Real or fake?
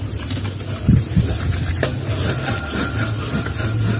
real